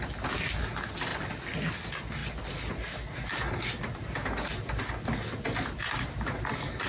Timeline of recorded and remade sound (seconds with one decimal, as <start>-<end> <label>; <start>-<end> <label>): 0.0-6.9 recorded